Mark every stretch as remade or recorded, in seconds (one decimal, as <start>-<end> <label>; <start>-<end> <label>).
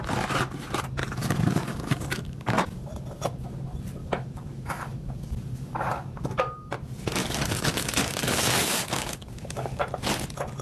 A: 0.0-1.0 recorded; 1.0-2.8 remade; 2.8-4.0 recorded; 4.0-6.7 remade; 6.7-7.2 recorded; 7.2-9.8 remade; 9.8-10.6 recorded